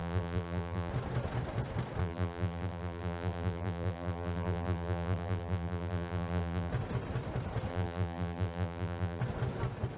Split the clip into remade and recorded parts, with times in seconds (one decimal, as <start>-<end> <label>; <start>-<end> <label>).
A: 0.0-0.9 remade; 0.9-2.0 recorded; 2.0-6.7 remade; 6.7-7.7 recorded; 7.7-9.2 remade; 9.2-10.0 recorded